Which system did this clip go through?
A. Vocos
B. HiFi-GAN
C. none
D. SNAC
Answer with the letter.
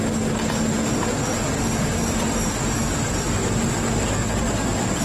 C